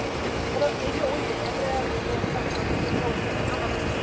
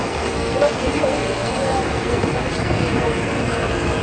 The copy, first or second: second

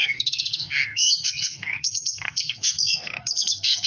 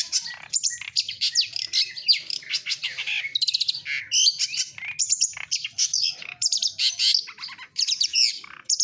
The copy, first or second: first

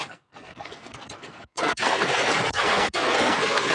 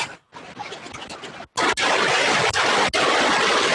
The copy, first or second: first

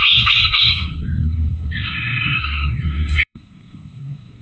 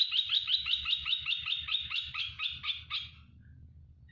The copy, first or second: first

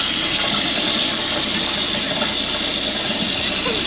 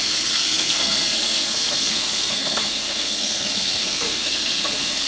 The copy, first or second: second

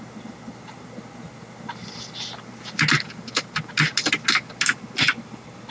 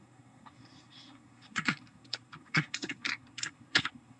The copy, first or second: second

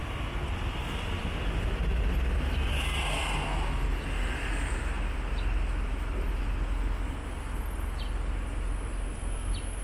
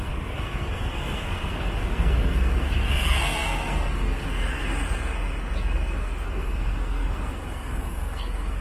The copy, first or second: second